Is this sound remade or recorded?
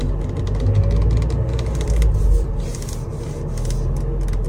recorded